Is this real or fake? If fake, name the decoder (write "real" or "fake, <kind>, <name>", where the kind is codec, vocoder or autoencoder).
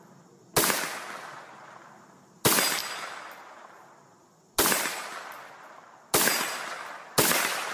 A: real